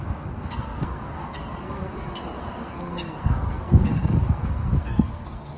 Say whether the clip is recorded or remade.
remade